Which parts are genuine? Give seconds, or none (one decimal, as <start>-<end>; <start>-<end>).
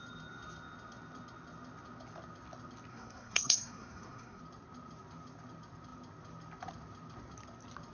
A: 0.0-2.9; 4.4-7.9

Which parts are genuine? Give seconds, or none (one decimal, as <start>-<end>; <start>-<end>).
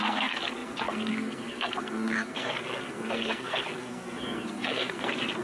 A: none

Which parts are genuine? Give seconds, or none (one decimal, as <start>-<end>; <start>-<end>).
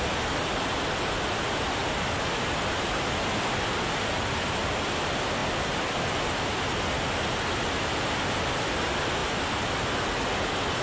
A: 0.0-5.4; 7.1-10.8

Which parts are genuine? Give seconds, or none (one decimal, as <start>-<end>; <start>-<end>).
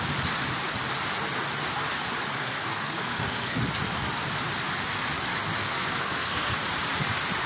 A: 0.0-2.4; 3.6-5.6; 6.6-7.5